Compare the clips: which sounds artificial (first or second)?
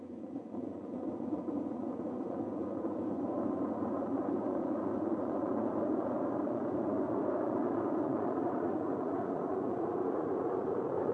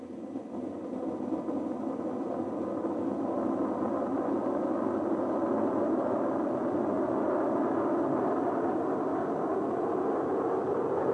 first